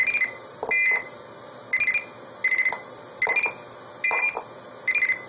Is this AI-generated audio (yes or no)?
no